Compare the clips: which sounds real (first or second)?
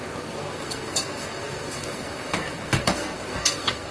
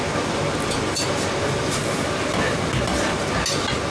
second